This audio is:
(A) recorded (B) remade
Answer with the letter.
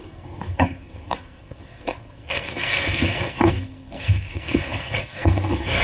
B